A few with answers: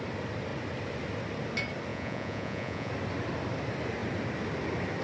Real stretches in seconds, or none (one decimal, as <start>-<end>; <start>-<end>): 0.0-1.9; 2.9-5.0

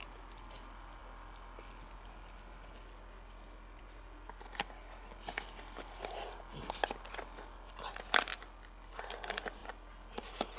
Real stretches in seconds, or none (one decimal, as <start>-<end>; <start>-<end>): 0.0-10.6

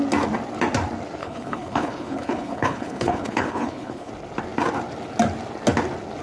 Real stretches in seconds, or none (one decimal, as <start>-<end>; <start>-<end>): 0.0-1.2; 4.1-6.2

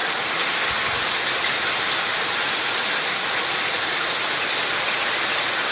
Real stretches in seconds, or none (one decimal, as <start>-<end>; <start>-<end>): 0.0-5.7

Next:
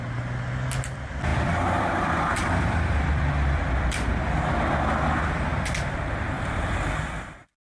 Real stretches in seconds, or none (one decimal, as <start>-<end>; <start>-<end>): 0.0-1.3; 4.1-7.6